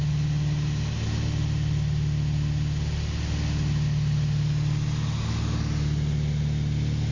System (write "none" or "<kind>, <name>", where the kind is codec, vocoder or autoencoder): none